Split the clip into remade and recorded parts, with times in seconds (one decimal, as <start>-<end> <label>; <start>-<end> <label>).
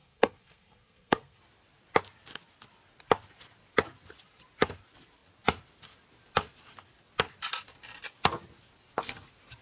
0.0-1.4 remade; 1.4-9.6 recorded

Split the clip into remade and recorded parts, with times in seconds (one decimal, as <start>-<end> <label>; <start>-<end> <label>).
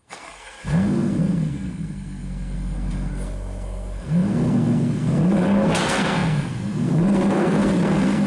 0.0-8.3 remade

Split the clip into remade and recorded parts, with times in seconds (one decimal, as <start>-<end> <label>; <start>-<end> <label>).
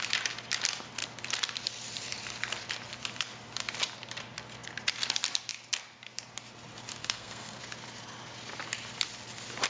0.0-7.0 recorded; 7.0-7.6 remade; 7.6-9.7 recorded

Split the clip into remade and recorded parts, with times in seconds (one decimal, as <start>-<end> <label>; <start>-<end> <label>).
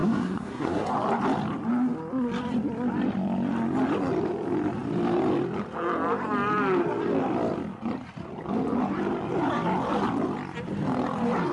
0.0-0.9 remade; 0.9-11.5 recorded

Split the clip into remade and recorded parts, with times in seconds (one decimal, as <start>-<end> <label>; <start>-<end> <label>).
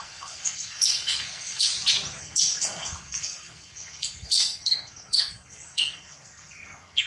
0.0-1.7 remade; 1.7-2.2 recorded; 2.2-7.1 remade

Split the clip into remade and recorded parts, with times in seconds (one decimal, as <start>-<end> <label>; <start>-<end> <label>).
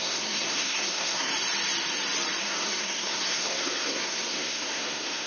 0.0-1.3 remade; 1.3-2.4 recorded; 2.4-5.3 remade